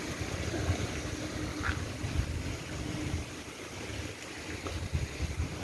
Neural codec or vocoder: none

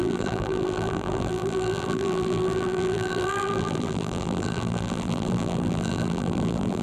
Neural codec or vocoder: vocoder, BigVGAN v2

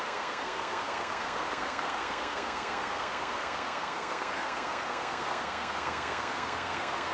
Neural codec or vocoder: codec, SNAC